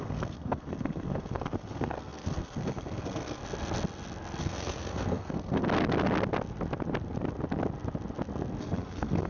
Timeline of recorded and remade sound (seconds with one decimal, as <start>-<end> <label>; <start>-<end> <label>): 0.0-3.4 remade; 3.4-4.4 recorded; 4.4-5.6 remade; 5.6-8.6 recorded; 8.6-9.3 remade